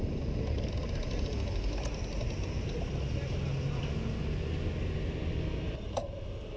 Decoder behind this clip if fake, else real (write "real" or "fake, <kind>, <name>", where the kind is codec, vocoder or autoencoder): real